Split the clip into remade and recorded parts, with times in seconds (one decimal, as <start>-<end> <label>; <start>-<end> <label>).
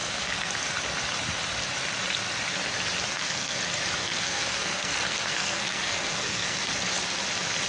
0.0-0.5 remade; 0.5-3.1 recorded; 3.1-3.6 remade; 3.6-4.0 recorded; 4.0-6.6 remade; 6.6-7.7 recorded